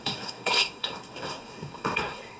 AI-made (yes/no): yes